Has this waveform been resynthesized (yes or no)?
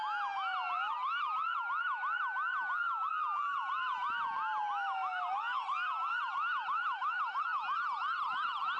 no